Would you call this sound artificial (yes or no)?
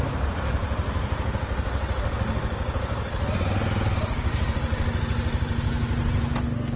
no